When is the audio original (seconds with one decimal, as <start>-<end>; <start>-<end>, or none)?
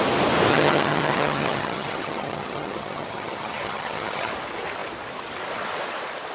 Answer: 0.0-0.5; 4.3-6.3